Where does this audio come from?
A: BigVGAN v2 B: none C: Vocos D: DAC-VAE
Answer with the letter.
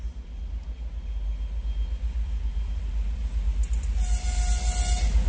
B